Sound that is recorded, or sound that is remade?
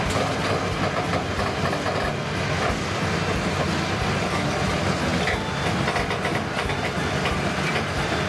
recorded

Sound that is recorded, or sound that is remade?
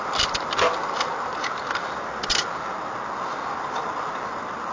recorded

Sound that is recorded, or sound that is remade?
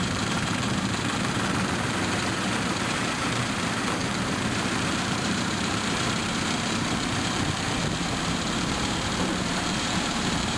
remade